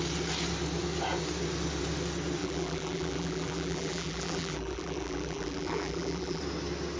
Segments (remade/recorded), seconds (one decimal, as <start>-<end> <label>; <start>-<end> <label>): 0.0-2.4 recorded; 2.4-6.4 remade; 6.4-7.0 recorded